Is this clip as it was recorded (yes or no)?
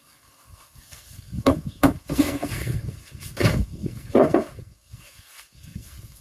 no